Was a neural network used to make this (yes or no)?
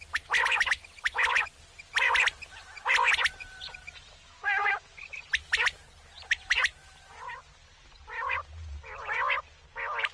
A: no